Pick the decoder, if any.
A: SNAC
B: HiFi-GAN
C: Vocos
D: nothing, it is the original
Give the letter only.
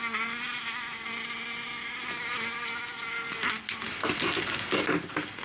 D